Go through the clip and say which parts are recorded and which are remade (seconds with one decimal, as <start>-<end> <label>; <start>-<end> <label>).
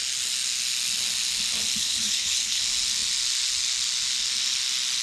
0.0-1.8 recorded; 1.8-2.6 remade; 2.6-5.0 recorded